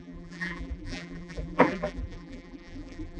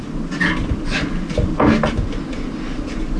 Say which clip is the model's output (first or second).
first